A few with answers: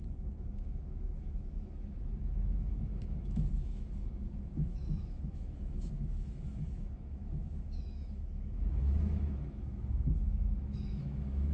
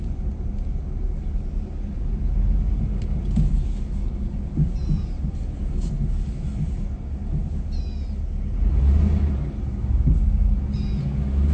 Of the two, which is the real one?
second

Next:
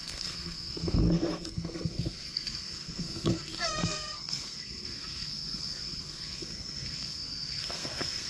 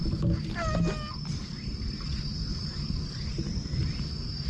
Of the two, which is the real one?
second